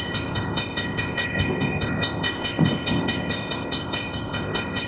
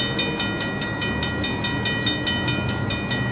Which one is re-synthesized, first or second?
first